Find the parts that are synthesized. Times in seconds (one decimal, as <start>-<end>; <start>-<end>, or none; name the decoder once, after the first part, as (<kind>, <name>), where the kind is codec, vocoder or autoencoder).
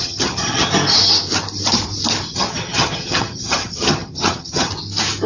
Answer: 0.0-0.7 (vocoder, HiFi-GAN); 2.3-4.7